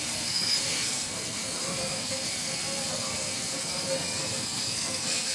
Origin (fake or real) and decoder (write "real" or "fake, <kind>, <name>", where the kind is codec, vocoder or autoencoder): fake, codec, SNAC